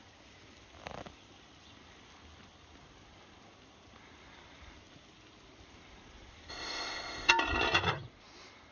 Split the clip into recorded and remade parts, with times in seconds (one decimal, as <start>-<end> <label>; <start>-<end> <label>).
0.0-6.5 recorded; 6.5-7.3 remade; 7.3-8.7 recorded